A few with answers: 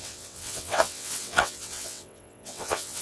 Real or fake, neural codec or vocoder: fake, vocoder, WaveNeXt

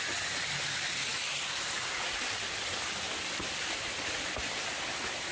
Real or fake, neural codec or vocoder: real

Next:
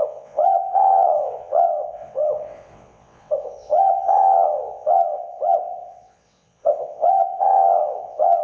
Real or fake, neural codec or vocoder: fake, vocoder, WaveNeXt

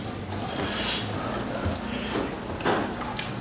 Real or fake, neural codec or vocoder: real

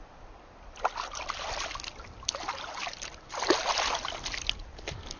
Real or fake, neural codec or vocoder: real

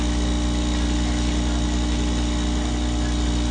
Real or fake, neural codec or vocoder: real